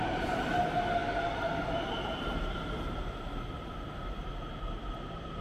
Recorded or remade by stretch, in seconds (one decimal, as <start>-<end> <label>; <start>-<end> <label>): 0.0-5.4 recorded